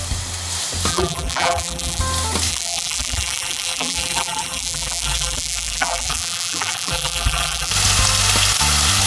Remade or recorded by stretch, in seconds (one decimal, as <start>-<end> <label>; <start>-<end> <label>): 0.0-0.9 recorded; 0.9-2.0 remade; 2.0-2.5 recorded; 2.5-7.7 remade; 7.7-9.1 recorded